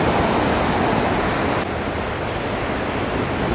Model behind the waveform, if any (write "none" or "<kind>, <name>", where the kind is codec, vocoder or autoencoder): none